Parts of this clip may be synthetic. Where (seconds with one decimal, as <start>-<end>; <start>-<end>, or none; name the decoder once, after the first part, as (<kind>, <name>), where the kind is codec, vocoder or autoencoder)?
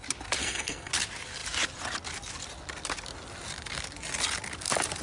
0.4-0.9 (codec, SNAC)